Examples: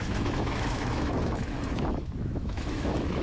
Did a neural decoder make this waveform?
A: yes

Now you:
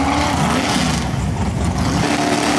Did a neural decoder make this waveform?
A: no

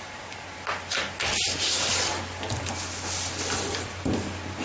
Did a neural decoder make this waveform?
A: no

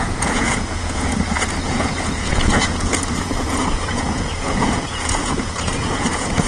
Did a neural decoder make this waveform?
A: yes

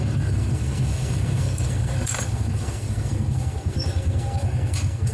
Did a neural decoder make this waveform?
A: yes